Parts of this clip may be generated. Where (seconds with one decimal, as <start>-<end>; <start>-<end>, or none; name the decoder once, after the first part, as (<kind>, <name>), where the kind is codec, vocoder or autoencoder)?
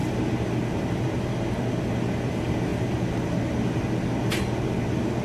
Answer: 2.1-2.7 (vocoder, BigVGAN v2)